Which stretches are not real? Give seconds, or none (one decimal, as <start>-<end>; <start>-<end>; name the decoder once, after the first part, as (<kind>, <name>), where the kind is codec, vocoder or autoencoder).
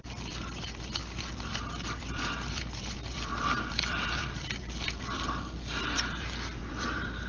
0.0-7.3 (vocoder, BigVGAN v2)